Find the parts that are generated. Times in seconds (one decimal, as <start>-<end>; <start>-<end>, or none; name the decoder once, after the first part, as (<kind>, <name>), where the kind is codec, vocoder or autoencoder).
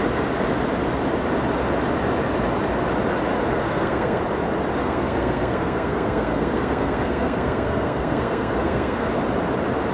3.6-4.2 (codec, SNAC); 4.8-9.1